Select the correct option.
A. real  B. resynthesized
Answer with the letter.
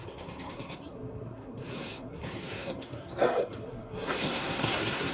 B